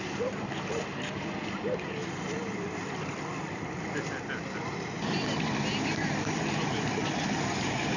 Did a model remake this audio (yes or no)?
yes